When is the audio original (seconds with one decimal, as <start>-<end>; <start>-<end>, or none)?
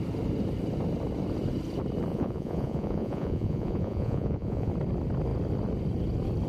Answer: 0.0-2.1; 4.7-6.5